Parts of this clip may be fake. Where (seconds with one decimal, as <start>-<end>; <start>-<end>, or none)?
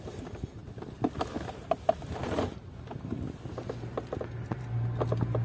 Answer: none